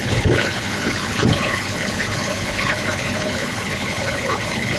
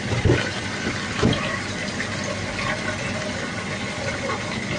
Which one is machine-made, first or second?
first